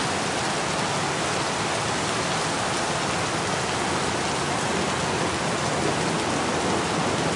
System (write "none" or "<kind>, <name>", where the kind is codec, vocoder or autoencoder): none